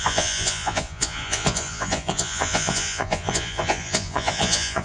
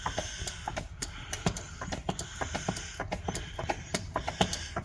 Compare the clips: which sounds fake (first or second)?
first